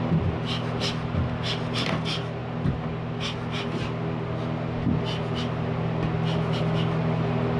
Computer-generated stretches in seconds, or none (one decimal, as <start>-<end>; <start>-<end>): none